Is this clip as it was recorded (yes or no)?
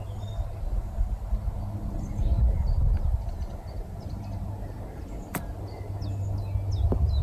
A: yes